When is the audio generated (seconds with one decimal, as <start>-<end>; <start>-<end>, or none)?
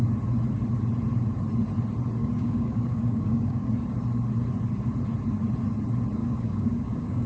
2.2-3.7; 6.2-7.3